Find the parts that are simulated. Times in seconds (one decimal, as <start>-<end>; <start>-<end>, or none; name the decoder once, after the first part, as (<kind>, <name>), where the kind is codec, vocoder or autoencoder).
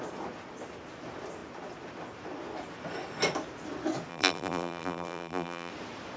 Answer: 4.1-5.7 (vocoder, BigVGAN v2)